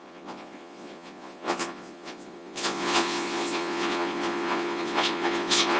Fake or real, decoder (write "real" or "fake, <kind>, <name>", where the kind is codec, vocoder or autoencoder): fake, vocoder, Vocos